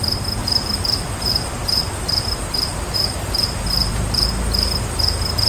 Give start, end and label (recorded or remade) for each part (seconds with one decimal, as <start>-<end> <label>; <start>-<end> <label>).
0.0-0.4 recorded; 0.4-3.6 remade; 3.6-5.5 recorded